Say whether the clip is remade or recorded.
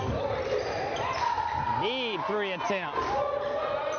recorded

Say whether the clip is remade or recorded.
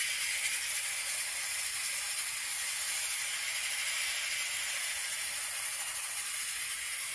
recorded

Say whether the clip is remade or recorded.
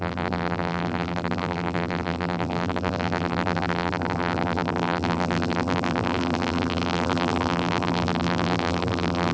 remade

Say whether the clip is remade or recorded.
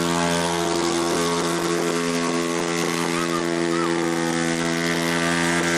recorded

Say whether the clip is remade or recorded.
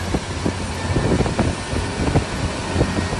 recorded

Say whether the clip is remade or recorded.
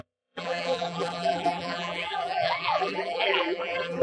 remade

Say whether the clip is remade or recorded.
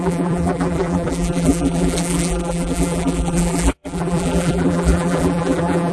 remade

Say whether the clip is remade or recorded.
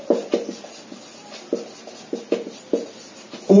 recorded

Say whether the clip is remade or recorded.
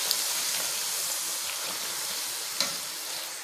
recorded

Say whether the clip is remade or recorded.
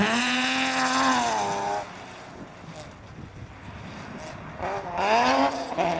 recorded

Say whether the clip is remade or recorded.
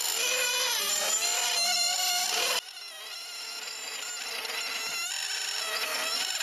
recorded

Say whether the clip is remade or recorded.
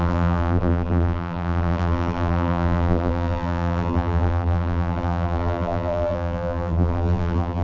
remade